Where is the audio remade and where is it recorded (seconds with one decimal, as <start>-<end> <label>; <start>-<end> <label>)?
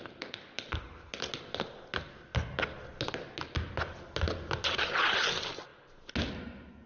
0.0-6.9 recorded